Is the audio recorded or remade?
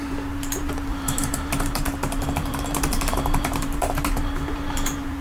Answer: remade